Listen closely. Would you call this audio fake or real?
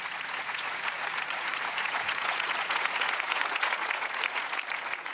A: fake